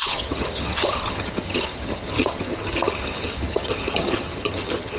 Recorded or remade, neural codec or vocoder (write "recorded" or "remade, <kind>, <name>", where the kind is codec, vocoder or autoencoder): remade, vocoder, HiFi-GAN